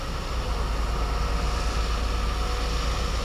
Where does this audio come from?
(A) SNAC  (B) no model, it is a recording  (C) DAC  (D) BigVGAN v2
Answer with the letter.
B